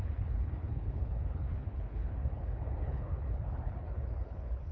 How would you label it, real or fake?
fake